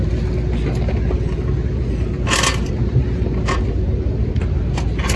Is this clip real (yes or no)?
yes